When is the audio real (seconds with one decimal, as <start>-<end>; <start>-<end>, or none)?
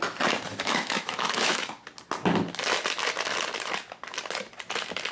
0.0-0.5; 1.7-5.1